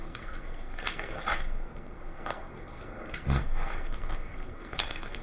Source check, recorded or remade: remade